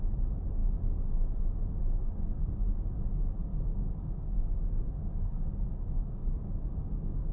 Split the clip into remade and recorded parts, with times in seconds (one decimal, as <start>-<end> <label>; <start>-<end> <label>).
0.0-3.5 recorded; 3.5-7.3 remade